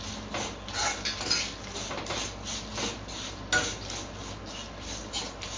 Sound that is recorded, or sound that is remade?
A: recorded